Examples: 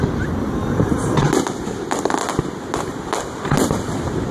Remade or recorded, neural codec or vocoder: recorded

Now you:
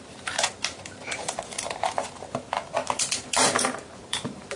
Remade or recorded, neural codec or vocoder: remade, vocoder, BigVGAN v2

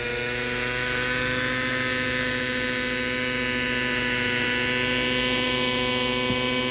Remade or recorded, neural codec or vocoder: recorded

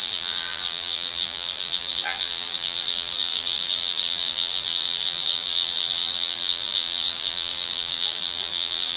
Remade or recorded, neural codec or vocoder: remade, vocoder, BigVGAN v2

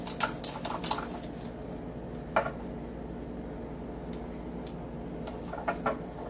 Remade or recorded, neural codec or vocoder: recorded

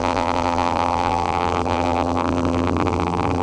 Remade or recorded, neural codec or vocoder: remade, vocoder, BigVGAN v2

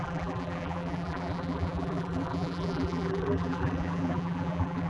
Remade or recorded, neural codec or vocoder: remade, vocoder, BigVGAN v2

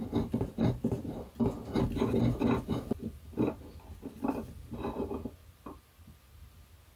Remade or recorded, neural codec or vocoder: recorded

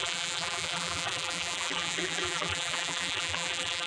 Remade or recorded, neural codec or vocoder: remade, vocoder, BigVGAN v2